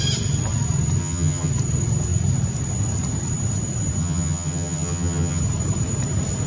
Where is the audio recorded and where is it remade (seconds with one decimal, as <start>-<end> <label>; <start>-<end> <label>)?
0.0-1.0 recorded; 1.0-1.5 remade; 1.5-4.0 recorded; 4.0-5.4 remade; 5.4-6.5 recorded